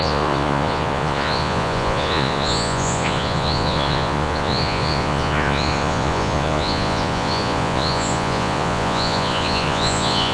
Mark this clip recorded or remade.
remade